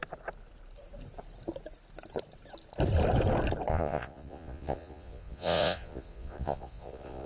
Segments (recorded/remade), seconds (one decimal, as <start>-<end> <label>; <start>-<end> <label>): 0.0-3.7 recorded; 3.7-7.3 remade